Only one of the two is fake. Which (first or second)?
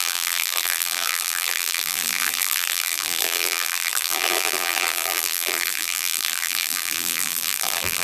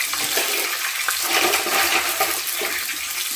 first